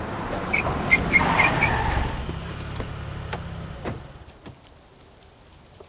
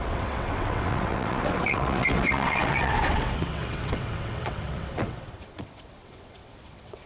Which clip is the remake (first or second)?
second